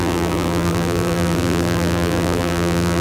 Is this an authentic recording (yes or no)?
no